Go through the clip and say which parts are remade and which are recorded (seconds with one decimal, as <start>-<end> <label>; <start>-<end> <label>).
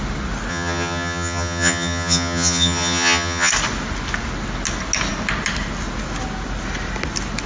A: 0.0-0.5 recorded; 0.5-3.5 remade; 3.5-7.5 recorded